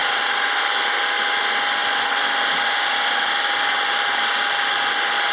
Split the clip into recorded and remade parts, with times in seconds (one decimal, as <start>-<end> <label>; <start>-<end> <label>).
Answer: 0.0-5.3 recorded